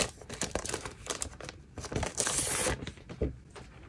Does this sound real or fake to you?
real